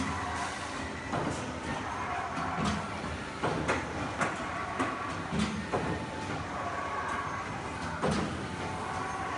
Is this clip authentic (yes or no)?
yes